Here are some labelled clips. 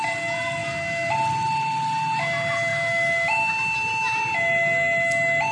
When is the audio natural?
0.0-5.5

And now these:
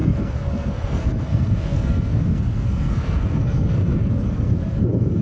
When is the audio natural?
none

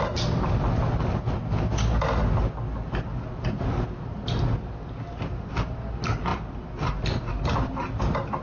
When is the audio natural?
0.0-8.4